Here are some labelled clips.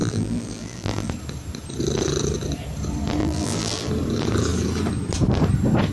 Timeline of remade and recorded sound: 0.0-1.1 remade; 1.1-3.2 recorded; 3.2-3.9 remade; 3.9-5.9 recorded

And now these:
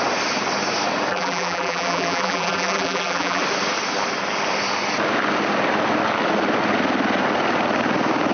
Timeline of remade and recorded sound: 0.0-1.1 recorded; 1.1-3.4 remade; 3.4-8.3 recorded

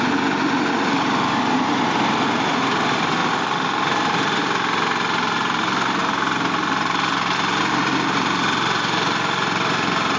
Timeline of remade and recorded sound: 0.0-6.0 remade; 6.0-7.6 recorded; 7.6-10.2 remade

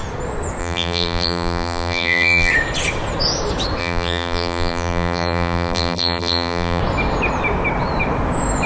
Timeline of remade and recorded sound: 0.0-0.6 recorded; 0.6-2.5 remade; 2.5-3.8 recorded; 3.8-6.8 remade; 6.8-8.7 recorded

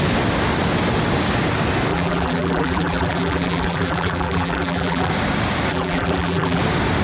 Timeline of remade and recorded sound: 0.0-1.9 recorded; 1.9-5.1 remade; 5.1-5.7 recorded; 5.7-6.6 remade; 6.6-7.0 recorded